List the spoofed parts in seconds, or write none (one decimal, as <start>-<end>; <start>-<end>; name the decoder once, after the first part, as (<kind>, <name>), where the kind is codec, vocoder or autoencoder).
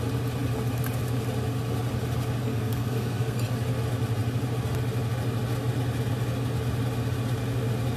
2.4-3.4 (codec, SNAC)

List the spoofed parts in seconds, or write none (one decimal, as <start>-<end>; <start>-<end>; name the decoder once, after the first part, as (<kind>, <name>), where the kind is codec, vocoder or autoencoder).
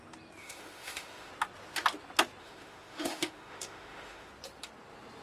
0.4-1.3 (autoencoder, DAC-VAE); 2.4-4.3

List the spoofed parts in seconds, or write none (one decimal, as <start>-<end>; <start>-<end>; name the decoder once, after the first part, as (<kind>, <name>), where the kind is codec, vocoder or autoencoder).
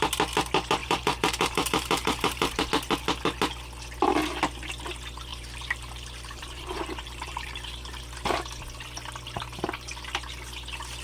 0.8-2.7 (vocoder, BigVGAN v2); 5.3-8.0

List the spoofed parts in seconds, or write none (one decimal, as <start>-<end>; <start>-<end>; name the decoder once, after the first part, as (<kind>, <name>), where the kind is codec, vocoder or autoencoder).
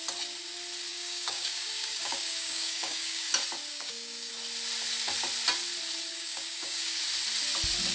0.9-3.3 (codec, DAC); 3.7-4.3; 6.1-7.0